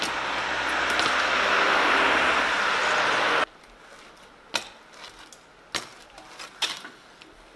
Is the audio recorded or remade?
recorded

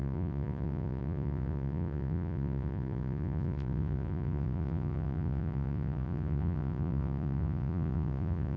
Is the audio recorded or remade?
remade